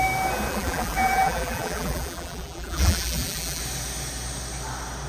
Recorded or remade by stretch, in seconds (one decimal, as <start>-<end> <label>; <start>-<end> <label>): 0.0-0.5 recorded; 0.5-3.6 remade; 3.6-5.1 recorded